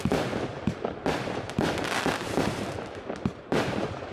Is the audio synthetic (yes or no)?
yes